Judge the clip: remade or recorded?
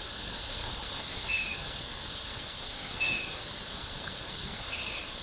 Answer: remade